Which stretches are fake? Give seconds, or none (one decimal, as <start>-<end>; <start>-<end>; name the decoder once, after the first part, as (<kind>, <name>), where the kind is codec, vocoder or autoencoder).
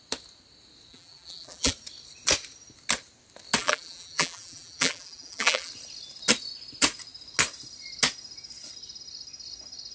0.9-1.7 (vocoder, BigVGAN v2); 3.6-5.7